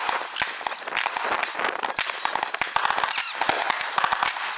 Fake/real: real